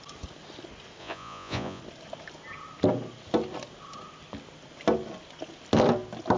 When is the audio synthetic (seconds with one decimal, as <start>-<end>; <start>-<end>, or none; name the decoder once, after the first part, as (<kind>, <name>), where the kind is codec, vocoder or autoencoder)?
1.0-1.8 (vocoder, Vocos)